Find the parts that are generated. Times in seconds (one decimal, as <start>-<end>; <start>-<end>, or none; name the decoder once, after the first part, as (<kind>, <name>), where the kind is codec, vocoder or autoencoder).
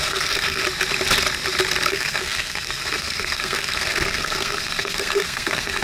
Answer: 0.0-0.6 (codec, SNAC); 1.9-5.8